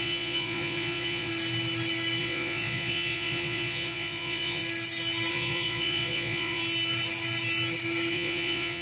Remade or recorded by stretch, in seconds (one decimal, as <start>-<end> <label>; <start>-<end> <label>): 0.0-1.3 remade; 1.3-2.2 recorded; 2.2-4.6 remade; 4.6-5.3 recorded; 5.3-6.6 remade; 6.6-8.1 recorded; 8.1-8.8 remade